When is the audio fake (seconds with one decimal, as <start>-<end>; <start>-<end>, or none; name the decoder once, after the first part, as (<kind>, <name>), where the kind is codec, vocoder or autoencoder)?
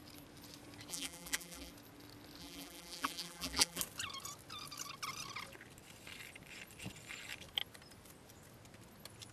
0.9-1.7 (vocoder, BigVGAN v2); 2.4-3.8